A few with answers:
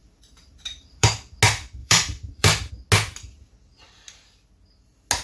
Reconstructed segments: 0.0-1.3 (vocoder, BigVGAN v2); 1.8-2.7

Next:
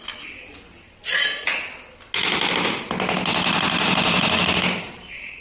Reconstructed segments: none

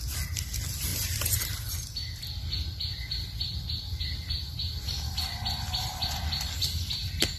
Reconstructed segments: none

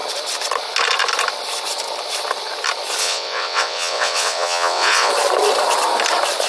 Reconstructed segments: 3.0-5.1 (vocoder, WaveNeXt)